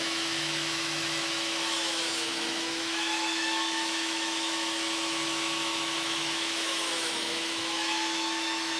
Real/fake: fake